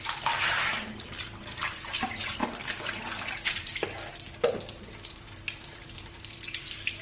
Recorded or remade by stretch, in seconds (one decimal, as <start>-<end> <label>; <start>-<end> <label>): 0.0-2.4 remade; 2.4-3.3 recorded; 3.3-3.7 remade; 3.7-4.7 recorded; 4.7-7.0 remade